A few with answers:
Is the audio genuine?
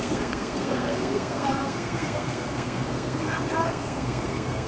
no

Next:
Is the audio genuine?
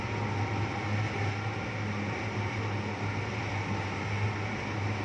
yes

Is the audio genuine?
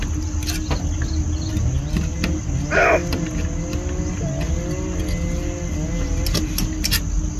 yes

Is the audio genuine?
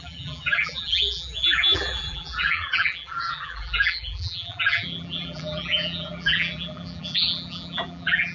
no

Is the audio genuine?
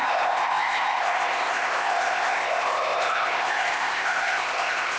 no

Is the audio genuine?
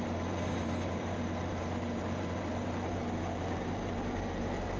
no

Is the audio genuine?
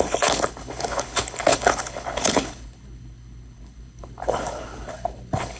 no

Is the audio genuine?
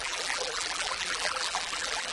no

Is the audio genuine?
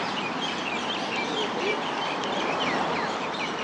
yes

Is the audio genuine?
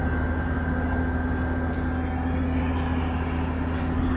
yes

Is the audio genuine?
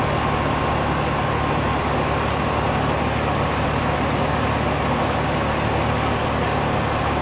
yes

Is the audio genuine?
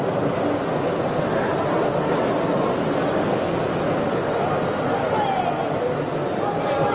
yes